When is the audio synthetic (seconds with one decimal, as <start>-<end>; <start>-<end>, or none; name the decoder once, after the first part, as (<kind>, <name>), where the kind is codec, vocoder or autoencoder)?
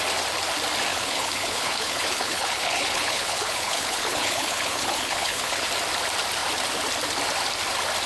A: 0.9-5.7 (codec, HILCodec)